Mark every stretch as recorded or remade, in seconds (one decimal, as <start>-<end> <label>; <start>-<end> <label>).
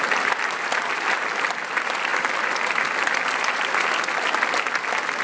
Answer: 0.0-5.2 recorded